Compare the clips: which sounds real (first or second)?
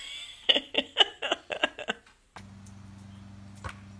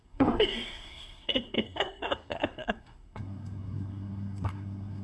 first